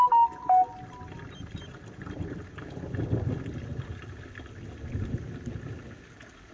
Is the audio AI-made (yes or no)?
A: no